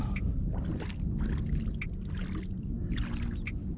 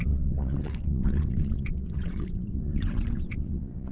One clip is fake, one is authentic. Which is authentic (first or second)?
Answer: first